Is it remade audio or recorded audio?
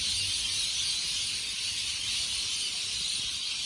recorded